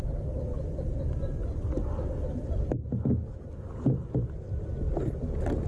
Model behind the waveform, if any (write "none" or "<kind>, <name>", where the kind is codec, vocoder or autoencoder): none